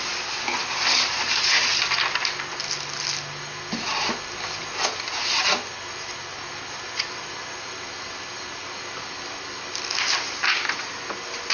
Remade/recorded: recorded